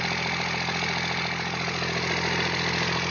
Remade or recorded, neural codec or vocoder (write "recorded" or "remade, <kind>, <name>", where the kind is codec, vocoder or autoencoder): recorded